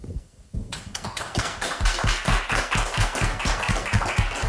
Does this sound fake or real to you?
fake